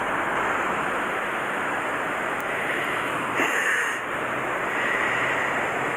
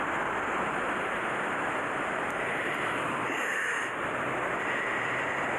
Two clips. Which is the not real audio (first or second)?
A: second